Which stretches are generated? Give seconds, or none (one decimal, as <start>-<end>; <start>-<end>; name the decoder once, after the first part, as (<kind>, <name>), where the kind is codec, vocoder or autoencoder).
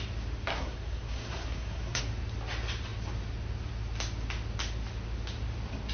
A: 0.5-2.0 (codec, SNAC)